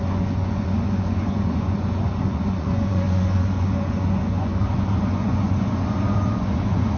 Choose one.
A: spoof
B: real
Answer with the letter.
A